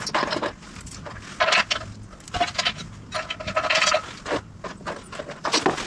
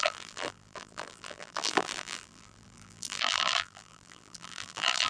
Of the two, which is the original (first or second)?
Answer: first